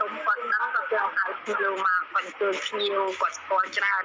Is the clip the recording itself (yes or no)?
yes